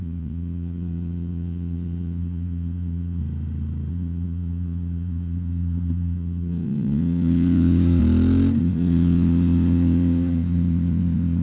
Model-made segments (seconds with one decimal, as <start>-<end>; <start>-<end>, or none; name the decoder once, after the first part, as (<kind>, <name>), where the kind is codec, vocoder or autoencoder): 0.0-3.2 (vocoder, Vocos); 3.9-8.0; 8.6-11.4